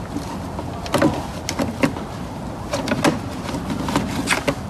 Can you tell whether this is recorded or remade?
recorded